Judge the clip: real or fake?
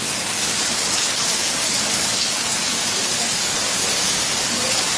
fake